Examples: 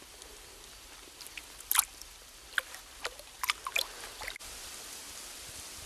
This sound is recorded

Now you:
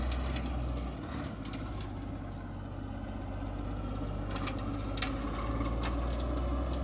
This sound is recorded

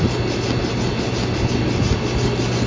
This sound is recorded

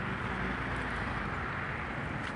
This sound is recorded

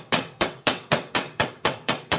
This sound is remade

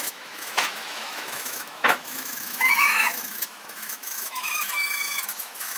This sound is remade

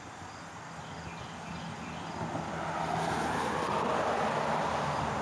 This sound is recorded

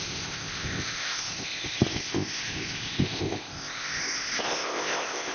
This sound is remade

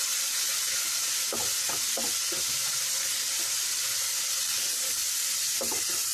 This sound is recorded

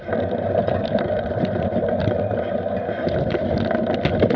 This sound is recorded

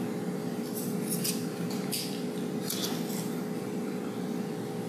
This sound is recorded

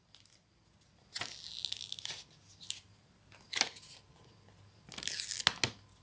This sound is recorded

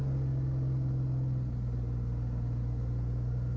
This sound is recorded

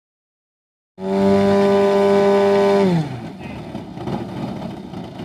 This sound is recorded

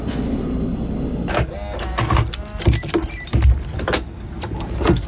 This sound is recorded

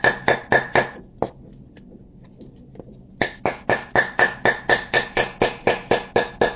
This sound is recorded